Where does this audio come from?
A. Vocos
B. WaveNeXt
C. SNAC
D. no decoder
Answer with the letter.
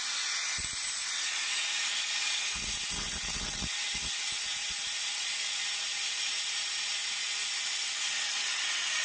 A